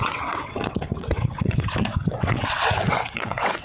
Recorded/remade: remade